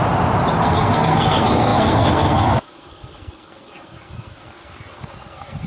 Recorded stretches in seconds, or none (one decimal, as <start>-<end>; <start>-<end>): 0.0-0.6